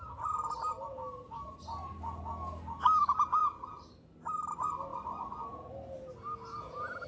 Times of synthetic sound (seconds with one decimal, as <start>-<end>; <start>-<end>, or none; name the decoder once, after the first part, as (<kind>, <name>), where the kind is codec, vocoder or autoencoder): none